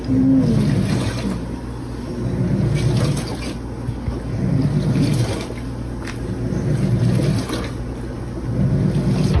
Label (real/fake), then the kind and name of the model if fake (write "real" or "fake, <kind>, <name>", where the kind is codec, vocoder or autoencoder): real